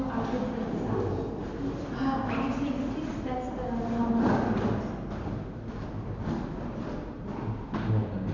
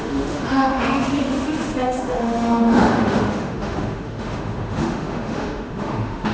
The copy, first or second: second